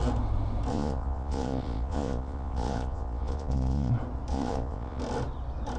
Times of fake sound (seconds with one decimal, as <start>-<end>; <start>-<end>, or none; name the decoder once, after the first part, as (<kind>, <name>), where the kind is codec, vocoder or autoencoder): 0.7-3.9 (vocoder, Vocos); 4.3-5.0